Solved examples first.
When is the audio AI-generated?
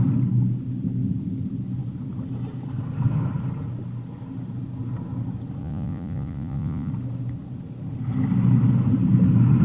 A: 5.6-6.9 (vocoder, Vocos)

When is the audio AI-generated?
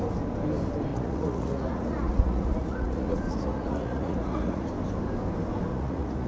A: 0.9-4.7 (vocoder, Vocos); 5.7-6.3